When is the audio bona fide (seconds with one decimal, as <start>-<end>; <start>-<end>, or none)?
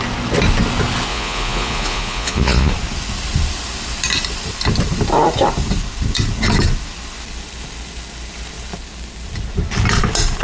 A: 0.0-1.1; 2.7-10.4